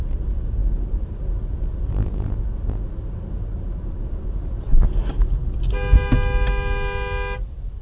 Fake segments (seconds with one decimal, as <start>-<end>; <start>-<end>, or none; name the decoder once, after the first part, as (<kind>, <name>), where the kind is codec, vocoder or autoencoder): none